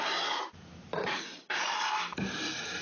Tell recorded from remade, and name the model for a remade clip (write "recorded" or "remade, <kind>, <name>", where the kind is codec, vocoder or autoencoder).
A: remade, vocoder, BigVGAN v2